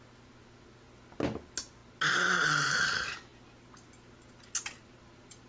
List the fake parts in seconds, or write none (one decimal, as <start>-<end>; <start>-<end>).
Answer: none